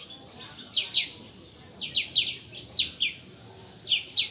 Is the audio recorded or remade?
recorded